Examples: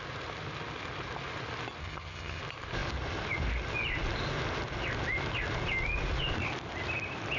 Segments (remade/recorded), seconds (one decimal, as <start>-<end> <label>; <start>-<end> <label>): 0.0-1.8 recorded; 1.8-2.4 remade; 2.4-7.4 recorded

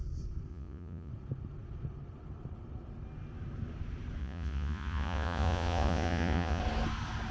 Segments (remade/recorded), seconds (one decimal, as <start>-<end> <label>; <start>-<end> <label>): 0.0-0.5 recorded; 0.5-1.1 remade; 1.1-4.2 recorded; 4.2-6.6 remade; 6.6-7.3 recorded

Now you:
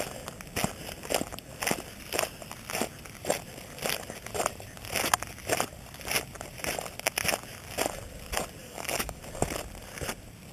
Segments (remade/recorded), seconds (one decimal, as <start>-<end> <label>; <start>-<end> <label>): 0.0-8.6 recorded; 8.6-9.2 remade; 9.2-10.5 recorded